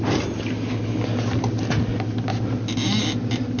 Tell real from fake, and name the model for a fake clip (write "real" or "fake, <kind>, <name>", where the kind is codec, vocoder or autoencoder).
real